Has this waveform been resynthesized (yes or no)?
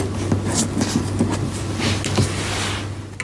no